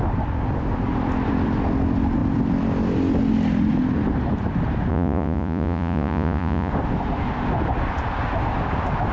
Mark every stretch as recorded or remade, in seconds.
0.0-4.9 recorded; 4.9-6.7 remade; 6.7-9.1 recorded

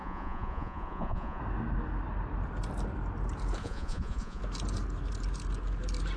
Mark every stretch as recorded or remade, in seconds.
0.0-1.4 remade; 1.4-3.6 recorded; 3.6-4.4 remade; 4.4-6.2 recorded

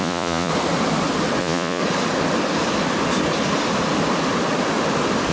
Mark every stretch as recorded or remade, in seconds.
0.0-0.5 remade; 0.5-1.4 recorded; 1.4-1.8 remade; 1.8-5.3 recorded

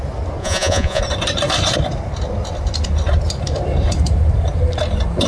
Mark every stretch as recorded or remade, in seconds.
0.0-0.4 recorded; 0.4-1.0 remade; 1.0-5.3 recorded

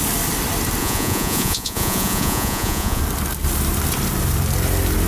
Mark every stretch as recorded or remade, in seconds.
0.0-0.8 recorded; 0.8-3.0 remade; 3.0-5.1 recorded

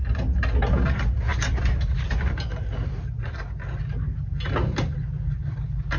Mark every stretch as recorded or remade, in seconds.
0.0-6.0 recorded